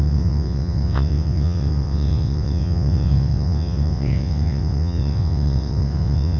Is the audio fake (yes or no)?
yes